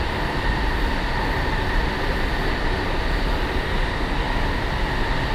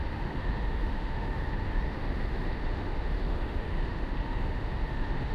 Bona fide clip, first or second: first